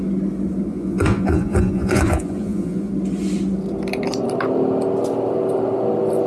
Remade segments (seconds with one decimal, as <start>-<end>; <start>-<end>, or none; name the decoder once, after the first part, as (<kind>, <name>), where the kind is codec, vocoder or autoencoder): 0.7-2.9 (vocoder, Vocos)